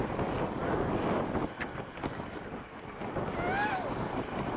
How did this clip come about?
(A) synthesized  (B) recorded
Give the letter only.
B